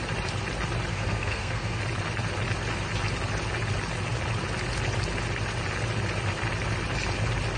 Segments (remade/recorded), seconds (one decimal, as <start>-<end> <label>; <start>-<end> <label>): 0.0-0.9 recorded; 0.9-1.8 remade; 1.8-7.6 recorded